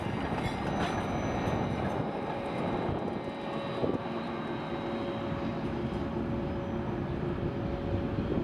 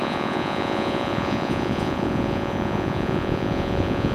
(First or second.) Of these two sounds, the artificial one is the second